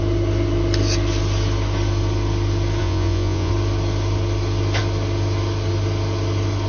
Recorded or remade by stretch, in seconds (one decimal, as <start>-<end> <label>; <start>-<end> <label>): 0.0-2.8 recorded; 2.8-3.5 remade; 3.5-6.7 recorded